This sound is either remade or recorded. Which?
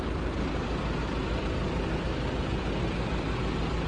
recorded